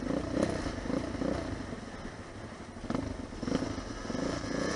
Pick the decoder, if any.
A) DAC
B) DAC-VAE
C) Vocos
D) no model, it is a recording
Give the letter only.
D